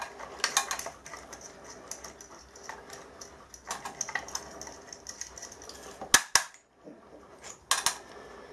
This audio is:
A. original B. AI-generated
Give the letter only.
A